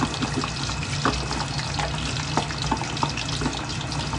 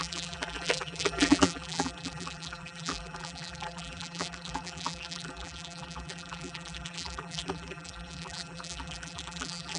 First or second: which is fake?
second